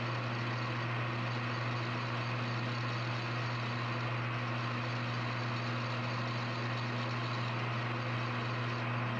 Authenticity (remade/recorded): recorded